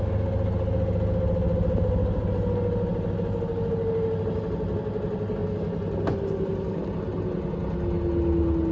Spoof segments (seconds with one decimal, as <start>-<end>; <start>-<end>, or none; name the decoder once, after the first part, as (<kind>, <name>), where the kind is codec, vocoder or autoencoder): none